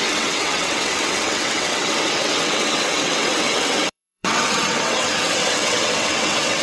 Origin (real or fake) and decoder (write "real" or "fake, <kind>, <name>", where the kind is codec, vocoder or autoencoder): fake, vocoder, WaveNeXt